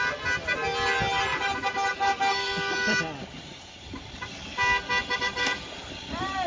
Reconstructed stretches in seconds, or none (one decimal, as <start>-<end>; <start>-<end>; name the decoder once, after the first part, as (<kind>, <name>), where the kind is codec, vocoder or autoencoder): 1.3-3.0 (vocoder, BigVGAN v2); 3.5-4.2; 5.0-5.9